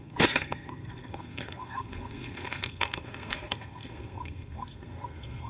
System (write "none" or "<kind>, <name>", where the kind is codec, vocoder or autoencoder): codec, SNAC